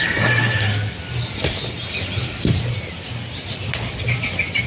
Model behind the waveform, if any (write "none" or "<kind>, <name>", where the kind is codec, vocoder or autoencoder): none